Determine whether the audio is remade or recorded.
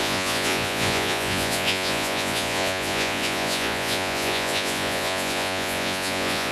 remade